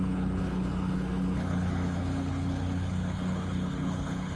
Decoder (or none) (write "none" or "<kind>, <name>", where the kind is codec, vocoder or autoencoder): codec, HILCodec